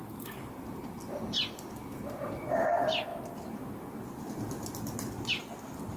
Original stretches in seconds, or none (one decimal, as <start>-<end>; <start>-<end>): 0.5-6.0